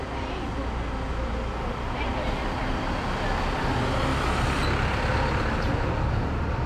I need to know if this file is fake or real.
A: real